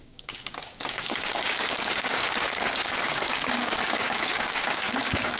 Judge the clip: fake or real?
fake